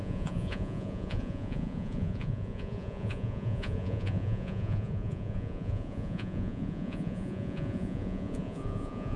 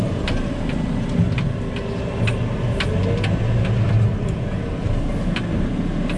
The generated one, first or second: first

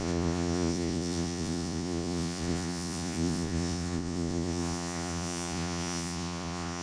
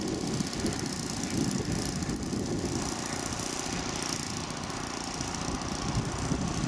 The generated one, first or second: first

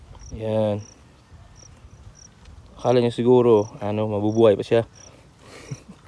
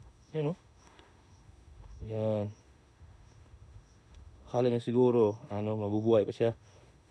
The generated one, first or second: second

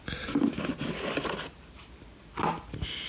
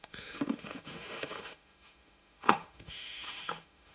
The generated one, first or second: second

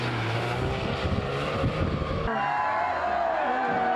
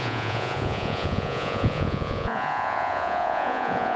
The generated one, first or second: second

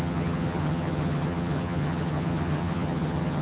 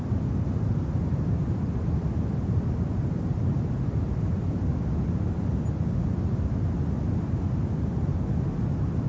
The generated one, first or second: first